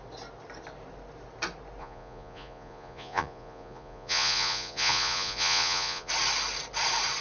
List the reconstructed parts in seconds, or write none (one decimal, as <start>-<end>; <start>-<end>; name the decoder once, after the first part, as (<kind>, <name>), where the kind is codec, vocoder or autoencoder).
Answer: 1.8-6.1 (vocoder, Vocos)